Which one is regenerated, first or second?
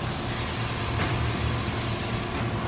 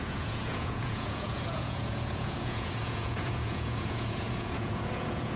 second